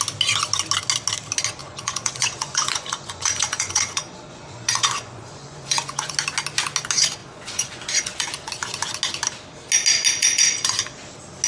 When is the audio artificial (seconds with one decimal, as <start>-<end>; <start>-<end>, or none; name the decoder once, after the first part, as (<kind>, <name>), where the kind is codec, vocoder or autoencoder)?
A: 1.6-6.1 (vocoder, Vocos); 7.2-8.5; 10.2-10.7